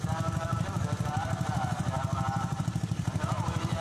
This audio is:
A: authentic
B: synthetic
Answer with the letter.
B